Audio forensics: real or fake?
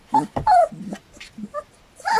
real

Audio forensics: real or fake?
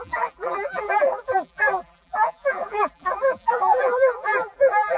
fake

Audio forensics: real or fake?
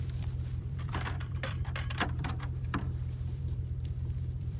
fake